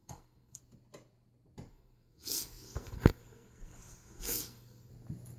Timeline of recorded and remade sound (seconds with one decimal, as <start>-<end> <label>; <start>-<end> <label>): 0.0-0.6 remade; 0.6-1.7 recorded; 1.7-4.9 remade; 4.9-5.4 recorded